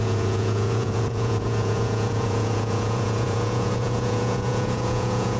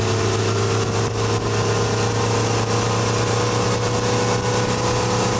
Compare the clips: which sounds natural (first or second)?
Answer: second